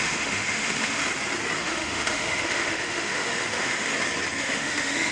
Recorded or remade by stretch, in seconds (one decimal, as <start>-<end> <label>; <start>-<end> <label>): 0.0-1.0 remade; 1.0-1.6 recorded; 1.6-3.9 remade; 3.9-4.4 recorded; 4.4-5.1 remade